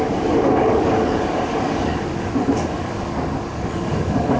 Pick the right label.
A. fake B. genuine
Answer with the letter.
A